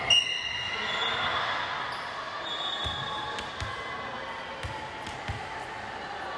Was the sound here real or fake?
real